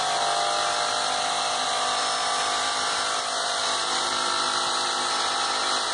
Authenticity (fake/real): real